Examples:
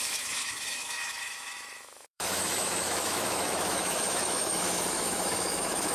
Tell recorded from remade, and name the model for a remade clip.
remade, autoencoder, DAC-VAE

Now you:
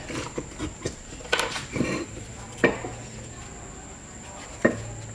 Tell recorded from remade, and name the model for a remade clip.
recorded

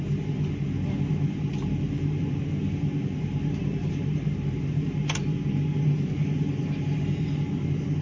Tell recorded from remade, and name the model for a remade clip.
recorded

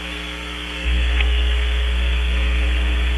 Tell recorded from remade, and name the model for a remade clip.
remade, codec, SNAC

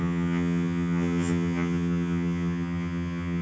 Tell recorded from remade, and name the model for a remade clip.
remade, vocoder, HiFi-GAN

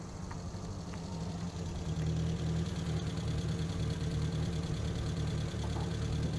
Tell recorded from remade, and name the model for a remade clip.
recorded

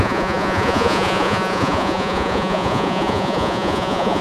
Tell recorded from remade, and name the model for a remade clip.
remade, vocoder, Vocos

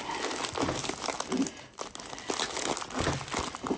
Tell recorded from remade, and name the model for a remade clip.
recorded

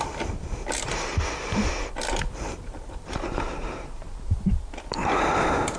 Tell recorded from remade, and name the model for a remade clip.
recorded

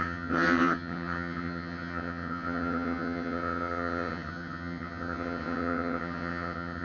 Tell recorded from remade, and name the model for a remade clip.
remade, vocoder, HiFi-GAN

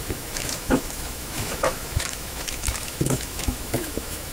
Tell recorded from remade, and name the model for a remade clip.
remade, autoencoder, DAC-VAE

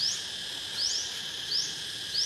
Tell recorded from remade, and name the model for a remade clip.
recorded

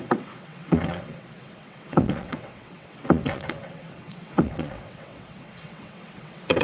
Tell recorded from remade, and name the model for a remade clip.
remade, vocoder, WaveNeXt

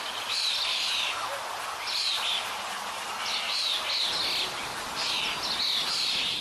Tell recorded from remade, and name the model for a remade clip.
recorded